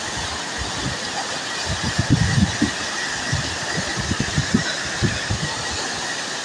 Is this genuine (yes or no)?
yes